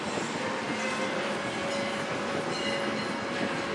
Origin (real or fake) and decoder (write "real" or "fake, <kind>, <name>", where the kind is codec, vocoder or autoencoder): real